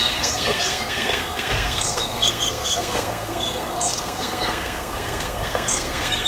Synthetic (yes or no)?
yes